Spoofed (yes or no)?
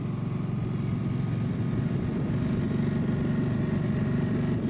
no